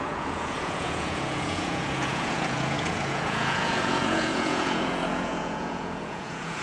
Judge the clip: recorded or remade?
remade